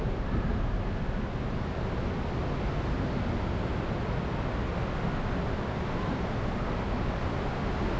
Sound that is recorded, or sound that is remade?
recorded